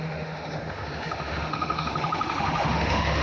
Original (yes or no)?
no